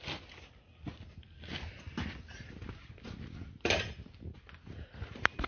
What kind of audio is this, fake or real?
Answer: real